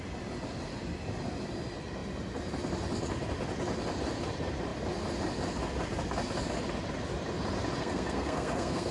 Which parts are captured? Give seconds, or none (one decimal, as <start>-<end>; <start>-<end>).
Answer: 0.0-7.8